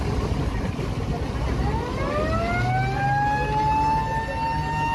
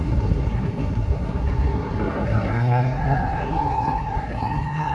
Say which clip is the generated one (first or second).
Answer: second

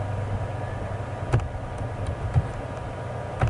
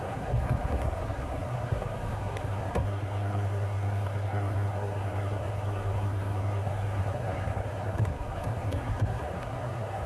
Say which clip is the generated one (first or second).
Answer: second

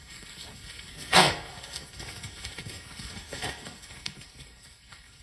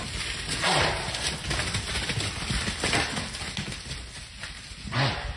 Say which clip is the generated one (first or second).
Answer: first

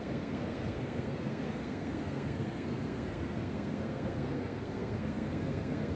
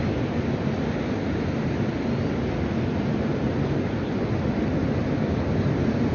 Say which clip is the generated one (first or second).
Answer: first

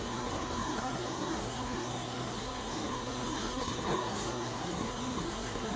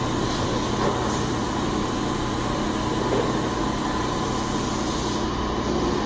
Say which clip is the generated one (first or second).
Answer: first